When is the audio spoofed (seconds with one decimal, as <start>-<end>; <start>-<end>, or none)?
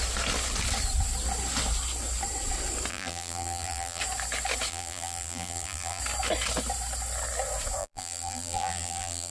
2.9-4.0; 4.7-6.0; 7.8-9.3